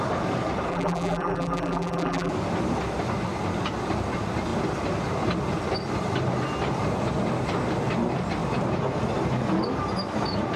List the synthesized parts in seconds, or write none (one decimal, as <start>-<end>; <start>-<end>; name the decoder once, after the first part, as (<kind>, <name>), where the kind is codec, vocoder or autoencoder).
0.7-2.3 (vocoder, BigVGAN v2)